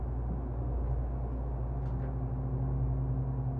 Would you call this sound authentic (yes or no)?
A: yes